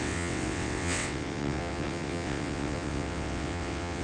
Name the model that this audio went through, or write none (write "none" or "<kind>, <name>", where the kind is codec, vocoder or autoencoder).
vocoder, WaveNeXt